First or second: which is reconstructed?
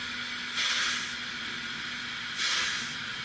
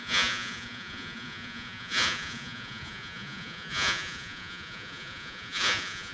second